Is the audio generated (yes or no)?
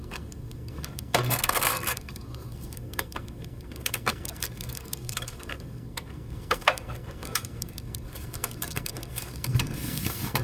yes